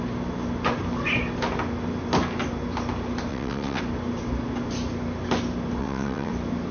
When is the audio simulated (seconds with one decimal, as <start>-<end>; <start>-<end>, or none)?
3.3-3.8; 5.8-6.3